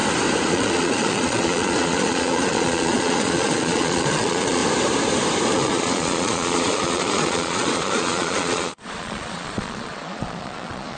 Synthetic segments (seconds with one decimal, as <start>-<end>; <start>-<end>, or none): 0.5-4.6; 5.5-11.0